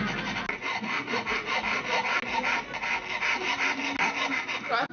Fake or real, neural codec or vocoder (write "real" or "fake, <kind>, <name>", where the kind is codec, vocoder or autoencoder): real